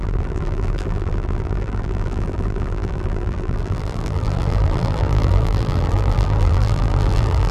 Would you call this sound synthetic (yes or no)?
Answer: yes